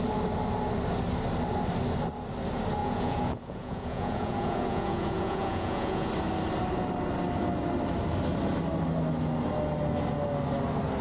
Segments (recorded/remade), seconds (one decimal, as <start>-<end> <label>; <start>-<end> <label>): 0.0-2.8 recorded; 2.8-6.1 remade; 6.1-11.0 recorded